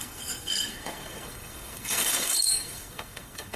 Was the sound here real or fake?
fake